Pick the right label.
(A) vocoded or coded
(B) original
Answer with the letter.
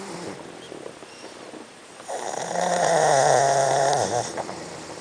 A